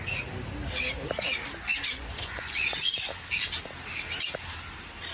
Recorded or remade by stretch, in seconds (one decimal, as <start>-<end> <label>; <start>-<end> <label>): 0.0-1.7 recorded; 1.7-3.1 remade; 3.1-5.1 recorded